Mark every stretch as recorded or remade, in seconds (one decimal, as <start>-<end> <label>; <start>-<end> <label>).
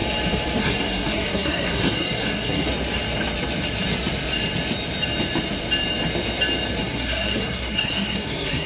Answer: 0.0-0.6 recorded; 0.6-2.7 remade; 2.7-6.8 recorded; 6.8-8.7 remade